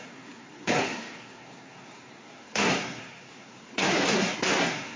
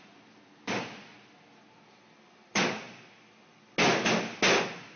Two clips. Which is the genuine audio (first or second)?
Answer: second